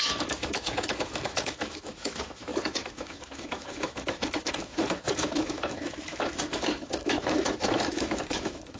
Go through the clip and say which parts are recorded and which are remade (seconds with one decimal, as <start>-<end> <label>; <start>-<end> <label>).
0.0-8.8 remade